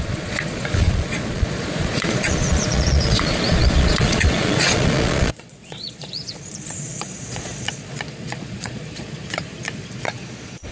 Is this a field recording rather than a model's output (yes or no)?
no